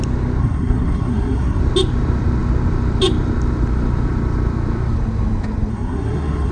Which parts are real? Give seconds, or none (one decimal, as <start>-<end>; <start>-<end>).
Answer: 0.0-0.4; 1.6-5.7